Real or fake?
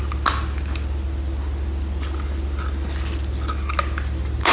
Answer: real